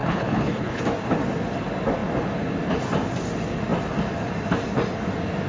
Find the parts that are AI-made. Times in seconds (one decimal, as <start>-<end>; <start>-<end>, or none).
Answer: 0.0-0.8